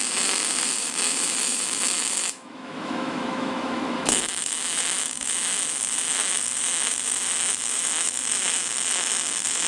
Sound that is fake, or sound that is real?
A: fake